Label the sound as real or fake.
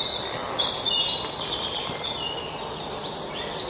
real